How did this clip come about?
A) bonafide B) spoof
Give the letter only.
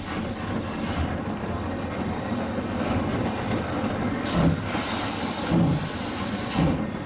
A